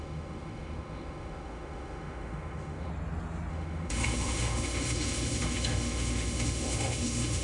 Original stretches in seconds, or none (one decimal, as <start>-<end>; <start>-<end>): 2.9-3.5